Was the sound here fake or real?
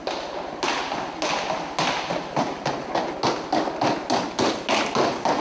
real